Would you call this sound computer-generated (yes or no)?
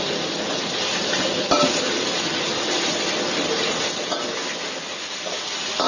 no